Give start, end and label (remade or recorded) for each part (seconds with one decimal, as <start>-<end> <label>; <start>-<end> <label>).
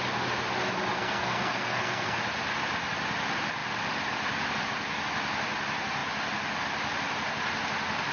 0.0-0.9 recorded; 0.9-2.2 remade; 2.2-8.1 recorded